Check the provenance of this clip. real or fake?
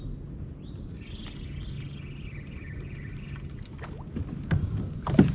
real